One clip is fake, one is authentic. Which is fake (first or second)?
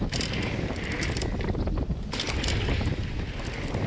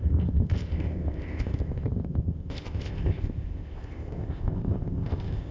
second